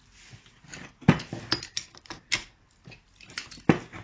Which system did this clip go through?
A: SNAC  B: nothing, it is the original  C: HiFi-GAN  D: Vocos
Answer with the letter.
B